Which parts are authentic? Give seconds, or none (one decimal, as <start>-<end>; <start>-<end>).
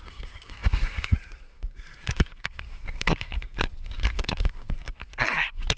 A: none